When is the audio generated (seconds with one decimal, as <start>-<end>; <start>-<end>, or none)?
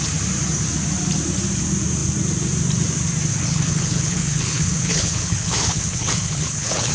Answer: 3.3-6.9